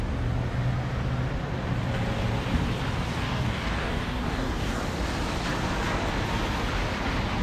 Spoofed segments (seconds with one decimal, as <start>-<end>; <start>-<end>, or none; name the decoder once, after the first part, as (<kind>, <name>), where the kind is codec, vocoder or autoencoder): 3.1-4.8 (codec, DAC)